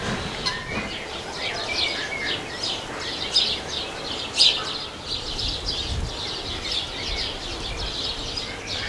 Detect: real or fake real